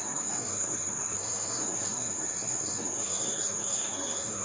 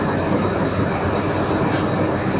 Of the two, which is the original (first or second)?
second